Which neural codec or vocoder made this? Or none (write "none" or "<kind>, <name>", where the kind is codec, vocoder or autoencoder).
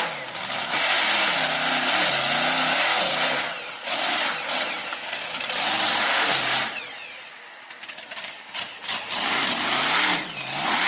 none